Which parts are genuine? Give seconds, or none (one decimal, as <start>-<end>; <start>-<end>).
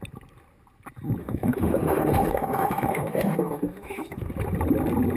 0.0-1.2; 4.3-5.2